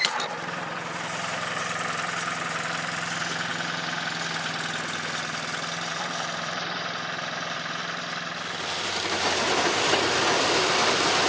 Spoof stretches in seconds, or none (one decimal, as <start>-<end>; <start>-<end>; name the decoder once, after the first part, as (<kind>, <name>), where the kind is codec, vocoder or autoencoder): 0.0-3.5 (vocoder, BigVGAN v2); 5.9-11.3